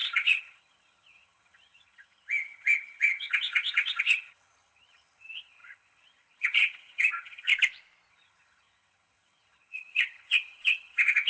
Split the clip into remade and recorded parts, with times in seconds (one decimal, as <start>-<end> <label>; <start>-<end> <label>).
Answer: 0.0-7.5 remade; 7.5-8.1 recorded; 8.1-11.3 remade